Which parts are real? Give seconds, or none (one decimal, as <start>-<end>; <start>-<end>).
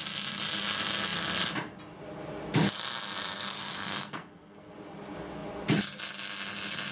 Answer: 0.0-3.5; 4.7-6.9